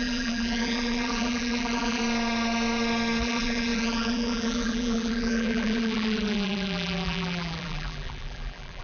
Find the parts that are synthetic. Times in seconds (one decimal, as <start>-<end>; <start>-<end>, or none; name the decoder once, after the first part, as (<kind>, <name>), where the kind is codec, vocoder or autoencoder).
0.0-2.0 (vocoder, BigVGAN v2); 3.2-8.8